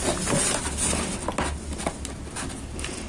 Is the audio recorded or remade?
recorded